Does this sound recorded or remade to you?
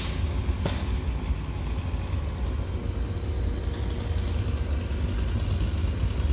recorded